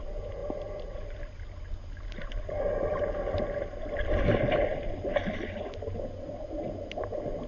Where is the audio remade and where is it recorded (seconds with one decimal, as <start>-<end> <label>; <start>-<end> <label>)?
0.0-7.5 recorded